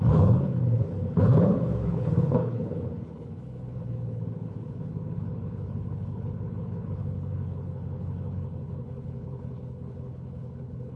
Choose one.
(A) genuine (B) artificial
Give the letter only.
B